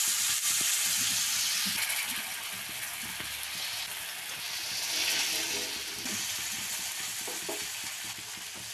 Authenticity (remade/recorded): recorded